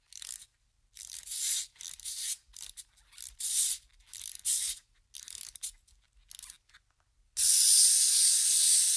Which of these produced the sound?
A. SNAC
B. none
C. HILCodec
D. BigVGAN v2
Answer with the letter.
B